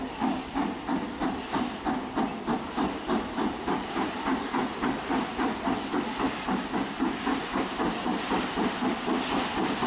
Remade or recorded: recorded